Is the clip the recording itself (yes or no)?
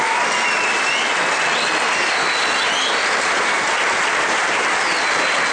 yes